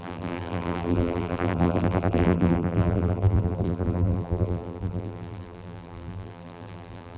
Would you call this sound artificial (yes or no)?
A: yes